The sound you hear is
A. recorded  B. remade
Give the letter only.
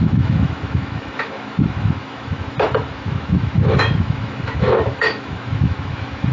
B